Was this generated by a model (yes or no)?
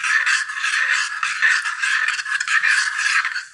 no